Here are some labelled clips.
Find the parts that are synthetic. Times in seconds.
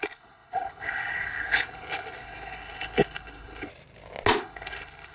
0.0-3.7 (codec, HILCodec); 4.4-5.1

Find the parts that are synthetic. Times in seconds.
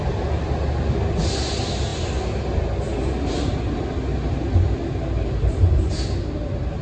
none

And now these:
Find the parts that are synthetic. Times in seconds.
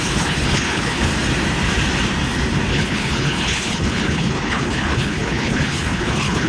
0.0-1.1 (codec, HILCodec); 2.7-6.5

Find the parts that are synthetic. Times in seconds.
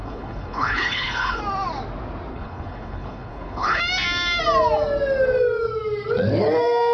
0.0-1.4 (codec, HILCodec); 2.3-3.8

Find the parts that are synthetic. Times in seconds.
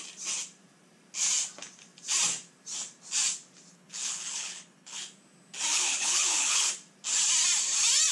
3.7-5.0 (codec, HILCodec); 5.7-6.7